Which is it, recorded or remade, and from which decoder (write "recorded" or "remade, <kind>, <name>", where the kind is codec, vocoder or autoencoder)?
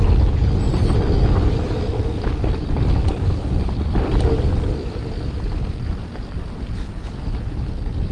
recorded